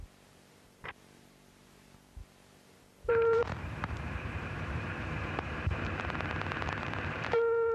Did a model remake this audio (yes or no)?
yes